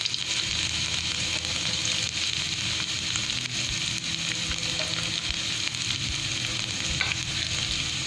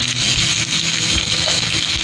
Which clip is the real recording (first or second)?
first